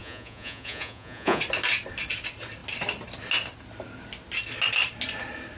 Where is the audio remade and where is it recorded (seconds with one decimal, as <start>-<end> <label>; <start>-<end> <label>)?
0.0-1.4 remade; 1.4-5.6 recorded